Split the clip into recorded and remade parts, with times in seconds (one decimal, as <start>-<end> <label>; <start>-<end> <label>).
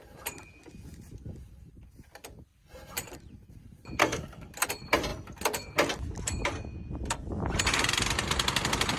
0.0-4.0 recorded; 4.0-4.5 remade; 4.5-9.0 recorded